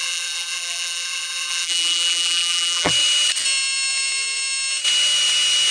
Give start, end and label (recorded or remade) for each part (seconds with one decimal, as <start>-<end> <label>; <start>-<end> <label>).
0.0-2.9 remade; 2.9-5.7 recorded